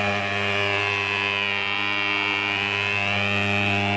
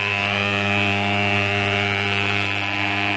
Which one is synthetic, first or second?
second